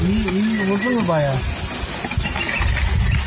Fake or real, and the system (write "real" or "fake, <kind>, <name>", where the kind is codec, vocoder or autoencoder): real